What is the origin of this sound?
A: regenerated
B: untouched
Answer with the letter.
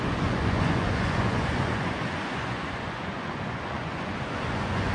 A